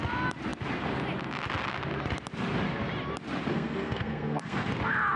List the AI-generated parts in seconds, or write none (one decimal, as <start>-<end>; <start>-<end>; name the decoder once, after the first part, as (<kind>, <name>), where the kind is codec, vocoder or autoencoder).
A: 3.5-4.7 (codec, SNAC)